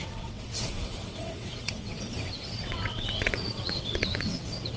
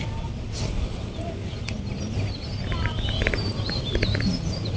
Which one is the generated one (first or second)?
first